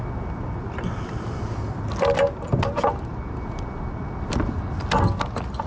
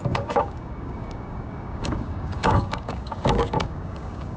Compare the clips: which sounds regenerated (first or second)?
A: second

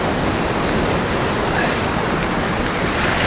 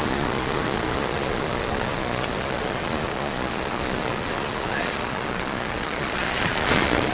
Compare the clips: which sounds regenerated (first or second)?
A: second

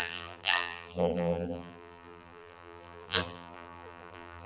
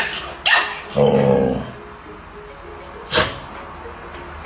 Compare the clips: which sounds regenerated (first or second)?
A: first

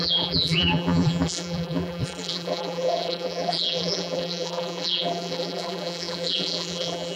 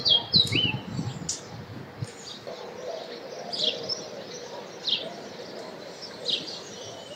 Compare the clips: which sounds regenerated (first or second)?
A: first